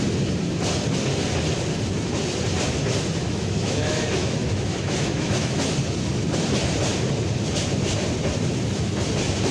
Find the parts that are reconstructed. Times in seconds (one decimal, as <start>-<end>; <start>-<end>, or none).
3.2-5.6